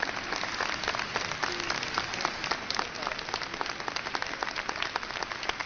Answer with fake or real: real